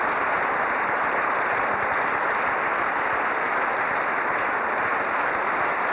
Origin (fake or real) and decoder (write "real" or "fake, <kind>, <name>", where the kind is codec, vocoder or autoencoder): real